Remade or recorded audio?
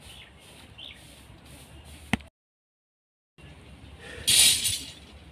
recorded